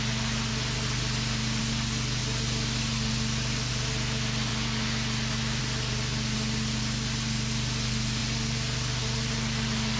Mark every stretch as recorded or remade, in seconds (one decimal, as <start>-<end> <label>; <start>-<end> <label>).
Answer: 0.0-10.0 recorded